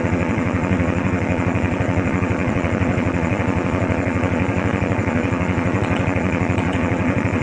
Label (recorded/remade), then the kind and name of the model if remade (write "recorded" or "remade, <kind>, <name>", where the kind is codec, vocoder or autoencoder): remade, vocoder, Vocos